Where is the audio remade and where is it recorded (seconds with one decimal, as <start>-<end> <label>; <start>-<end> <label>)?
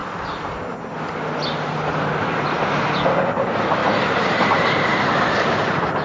0.0-3.2 recorded; 3.2-6.0 remade